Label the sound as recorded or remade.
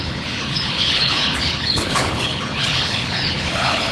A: remade